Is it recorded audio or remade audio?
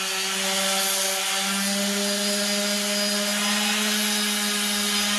recorded